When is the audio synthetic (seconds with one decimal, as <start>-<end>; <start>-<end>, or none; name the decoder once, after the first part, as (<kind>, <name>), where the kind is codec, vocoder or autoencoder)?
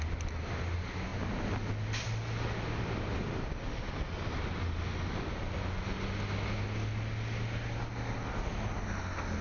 none